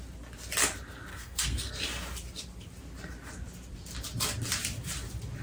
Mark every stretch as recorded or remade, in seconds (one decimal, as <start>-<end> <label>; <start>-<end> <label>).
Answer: 0.0-1.1 recorded; 1.1-1.7 remade; 1.7-5.4 recorded